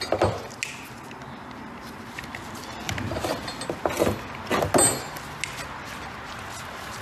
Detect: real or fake real